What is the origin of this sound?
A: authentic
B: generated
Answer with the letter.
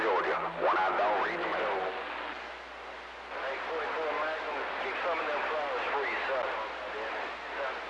A